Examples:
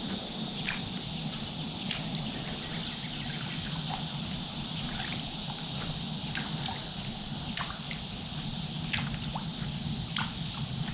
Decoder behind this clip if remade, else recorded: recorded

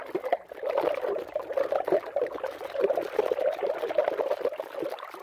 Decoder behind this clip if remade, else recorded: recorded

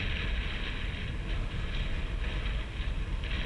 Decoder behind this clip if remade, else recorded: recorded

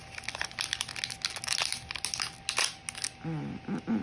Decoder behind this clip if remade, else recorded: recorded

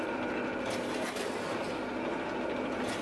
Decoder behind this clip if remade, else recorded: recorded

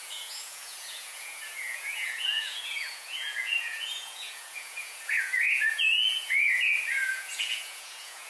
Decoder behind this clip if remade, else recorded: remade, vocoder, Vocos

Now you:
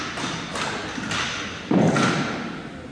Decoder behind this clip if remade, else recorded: recorded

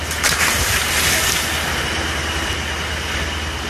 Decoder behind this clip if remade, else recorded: recorded